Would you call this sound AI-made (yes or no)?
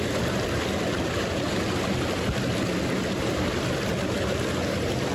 no